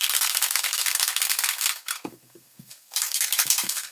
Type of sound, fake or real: fake